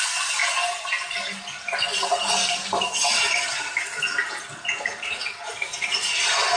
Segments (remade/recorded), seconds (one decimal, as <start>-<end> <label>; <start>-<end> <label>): 0.0-6.6 recorded